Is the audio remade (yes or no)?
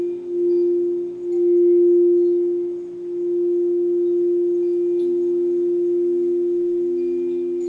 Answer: no